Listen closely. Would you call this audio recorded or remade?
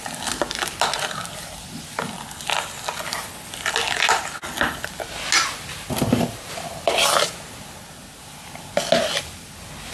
recorded